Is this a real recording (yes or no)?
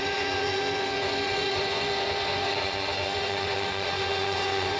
no